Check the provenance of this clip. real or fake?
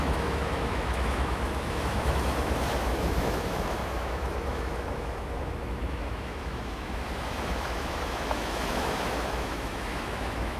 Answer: fake